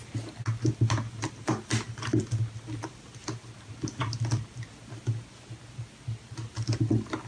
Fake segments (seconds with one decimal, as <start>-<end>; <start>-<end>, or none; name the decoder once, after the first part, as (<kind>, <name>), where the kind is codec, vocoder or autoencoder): 1.4-2.2 (vocoder, BigVGAN v2)